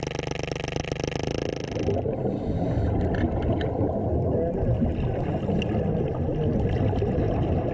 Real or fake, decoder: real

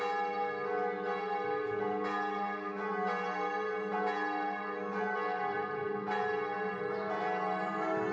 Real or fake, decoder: real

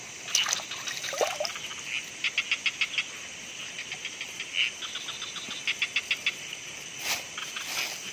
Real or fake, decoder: real